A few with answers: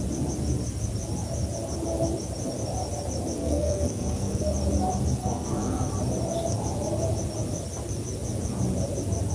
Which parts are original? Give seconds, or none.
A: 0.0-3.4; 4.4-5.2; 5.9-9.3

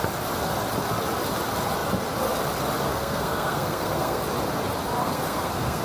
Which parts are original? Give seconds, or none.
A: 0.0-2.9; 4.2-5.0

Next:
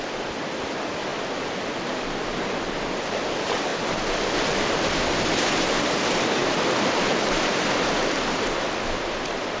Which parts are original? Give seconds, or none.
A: 0.0-9.6